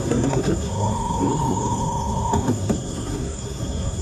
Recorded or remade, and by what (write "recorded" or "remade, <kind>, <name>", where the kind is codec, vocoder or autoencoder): remade, codec, SNAC